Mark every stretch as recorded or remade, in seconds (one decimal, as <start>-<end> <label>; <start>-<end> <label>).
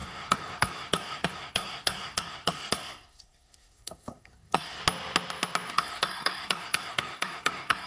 0.0-4.8 remade; 4.8-5.7 recorded; 5.7-7.9 remade